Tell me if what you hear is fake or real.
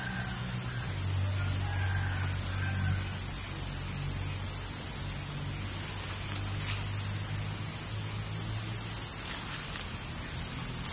real